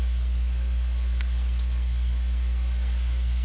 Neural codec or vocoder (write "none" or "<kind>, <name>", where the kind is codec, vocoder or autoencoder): codec, SNAC